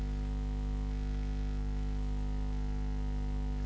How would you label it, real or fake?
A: real